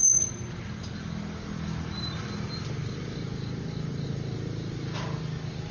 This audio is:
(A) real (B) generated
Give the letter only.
A